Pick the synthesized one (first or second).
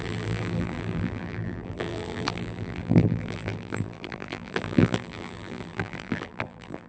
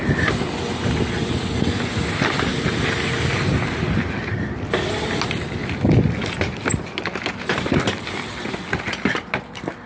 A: first